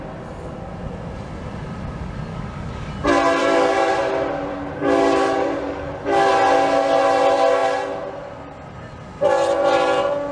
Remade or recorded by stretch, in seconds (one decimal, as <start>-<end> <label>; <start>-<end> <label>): 0.0-2.3 recorded; 2.3-2.9 remade; 2.9-3.4 recorded; 3.4-3.9 remade; 3.9-4.5 recorded; 4.5-6.3 remade; 6.3-10.3 recorded